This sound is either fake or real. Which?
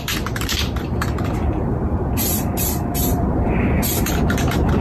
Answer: fake